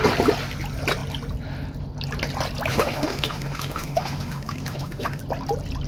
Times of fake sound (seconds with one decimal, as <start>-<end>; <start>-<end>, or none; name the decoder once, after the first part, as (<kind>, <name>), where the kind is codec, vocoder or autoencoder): 2.7-5.2 (autoencoder, DAC-VAE)